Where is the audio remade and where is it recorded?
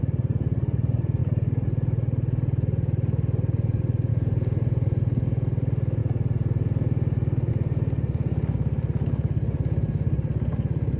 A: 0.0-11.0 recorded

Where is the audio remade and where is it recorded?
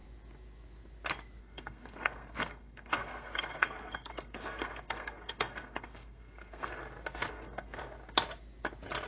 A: 0.0-1.4 recorded; 1.4-6.7 remade; 6.7-7.3 recorded; 7.3-7.8 remade; 7.8-9.1 recorded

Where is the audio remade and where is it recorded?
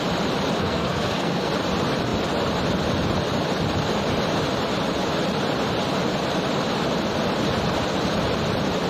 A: 0.0-0.6 recorded; 0.6-1.5 remade; 1.5-8.9 recorded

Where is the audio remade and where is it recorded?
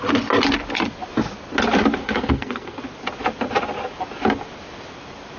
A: 0.0-2.0 recorded; 2.0-2.8 remade; 2.8-5.4 recorded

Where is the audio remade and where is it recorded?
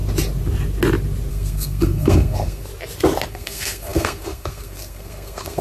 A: 0.0-1.3 recorded; 1.3-2.7 remade; 2.7-3.3 recorded; 3.3-5.6 remade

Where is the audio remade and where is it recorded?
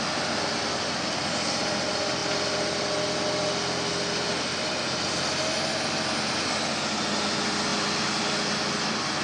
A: 0.0-9.2 recorded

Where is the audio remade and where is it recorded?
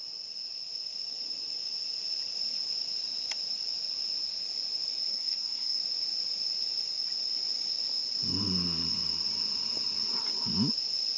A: 0.0-5.1 recorded; 5.1-5.8 remade; 5.8-11.2 recorded